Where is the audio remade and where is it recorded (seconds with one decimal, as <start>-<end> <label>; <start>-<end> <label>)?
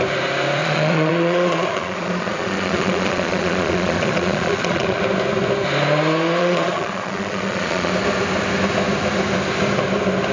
0.0-0.6 recorded; 0.6-5.0 remade; 5.0-6.4 recorded; 6.4-7.9 remade; 7.9-10.3 recorded